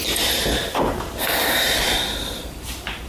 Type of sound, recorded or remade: recorded